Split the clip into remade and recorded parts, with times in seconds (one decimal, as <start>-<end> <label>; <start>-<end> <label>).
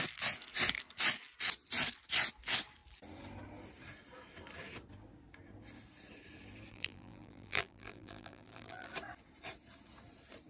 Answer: 0.0-6.7 recorded; 6.7-8.9 remade; 8.9-10.5 recorded